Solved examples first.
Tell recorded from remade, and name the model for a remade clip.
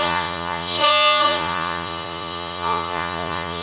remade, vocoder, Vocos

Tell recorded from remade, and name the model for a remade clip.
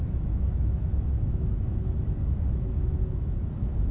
remade, autoencoder, DAC-VAE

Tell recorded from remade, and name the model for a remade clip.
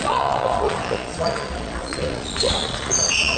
remade, vocoder, Vocos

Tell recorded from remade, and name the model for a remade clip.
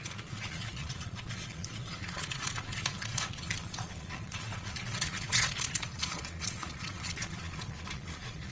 remade, vocoder, Vocos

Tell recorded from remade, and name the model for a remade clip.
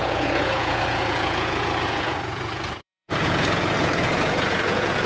remade, vocoder, Vocos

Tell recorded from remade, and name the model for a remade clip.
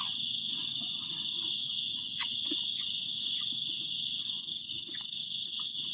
remade, vocoder, Vocos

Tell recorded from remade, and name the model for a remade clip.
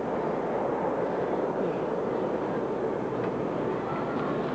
recorded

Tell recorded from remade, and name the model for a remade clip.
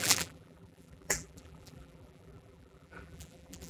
remade, vocoder, BigVGAN v2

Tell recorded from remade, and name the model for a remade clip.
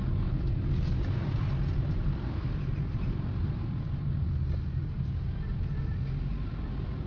recorded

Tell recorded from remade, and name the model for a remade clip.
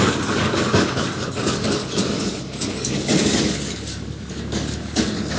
remade, codec, DAC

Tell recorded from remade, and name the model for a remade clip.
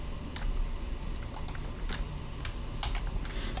recorded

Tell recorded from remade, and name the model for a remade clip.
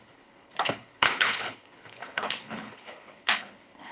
remade, codec, HILCodec